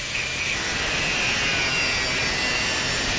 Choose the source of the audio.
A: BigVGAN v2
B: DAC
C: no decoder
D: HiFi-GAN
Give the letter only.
C